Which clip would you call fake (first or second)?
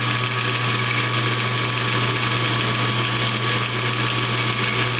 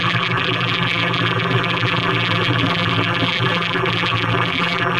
second